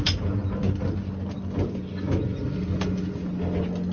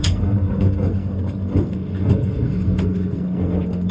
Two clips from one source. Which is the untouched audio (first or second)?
first